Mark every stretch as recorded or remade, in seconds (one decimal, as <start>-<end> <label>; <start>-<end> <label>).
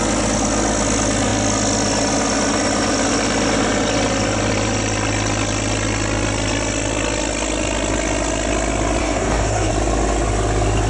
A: 0.0-9.0 recorded; 9.0-9.7 remade; 9.7-10.9 recorded